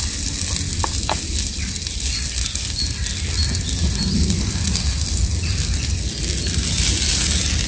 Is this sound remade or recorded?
recorded